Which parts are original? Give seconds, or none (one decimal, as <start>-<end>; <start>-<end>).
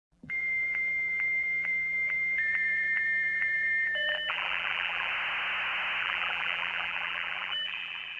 5.1-6.0